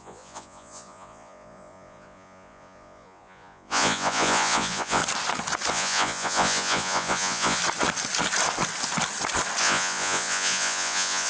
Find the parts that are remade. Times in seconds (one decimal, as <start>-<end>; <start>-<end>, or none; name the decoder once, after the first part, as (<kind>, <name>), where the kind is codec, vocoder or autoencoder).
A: 0.0-5.0 (vocoder, Vocos); 5.7-7.6; 9.6-11.3